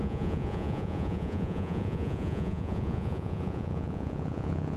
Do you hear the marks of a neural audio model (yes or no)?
yes